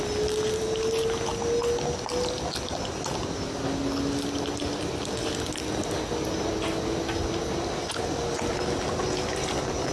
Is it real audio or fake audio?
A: real